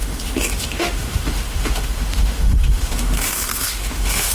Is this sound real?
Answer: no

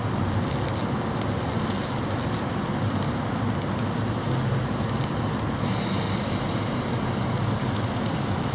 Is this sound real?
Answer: yes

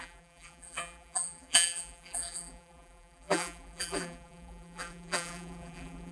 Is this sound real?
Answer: no